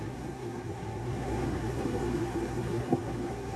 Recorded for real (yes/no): no